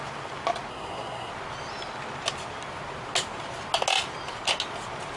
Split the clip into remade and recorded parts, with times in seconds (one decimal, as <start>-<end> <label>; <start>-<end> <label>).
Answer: 0.0-0.7 recorded; 0.7-1.3 remade; 1.3-5.2 recorded